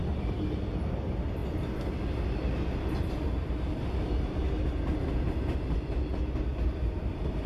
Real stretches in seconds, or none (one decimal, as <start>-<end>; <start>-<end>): 0.0-6.5